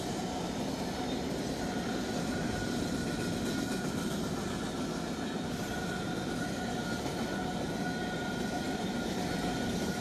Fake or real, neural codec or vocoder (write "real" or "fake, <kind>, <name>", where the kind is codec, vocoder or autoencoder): real